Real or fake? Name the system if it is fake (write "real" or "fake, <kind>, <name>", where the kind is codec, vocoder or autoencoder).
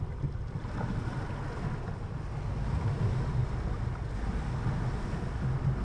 real